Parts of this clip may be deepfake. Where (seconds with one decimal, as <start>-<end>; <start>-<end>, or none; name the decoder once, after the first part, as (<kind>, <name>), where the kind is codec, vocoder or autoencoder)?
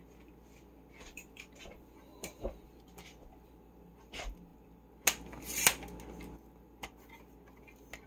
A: 0.0-4.5 (vocoder, BigVGAN v2)